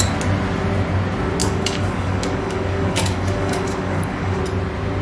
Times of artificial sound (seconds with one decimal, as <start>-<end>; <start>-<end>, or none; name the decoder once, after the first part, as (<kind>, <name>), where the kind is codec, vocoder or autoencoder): 1.4-4.4 (codec, DAC)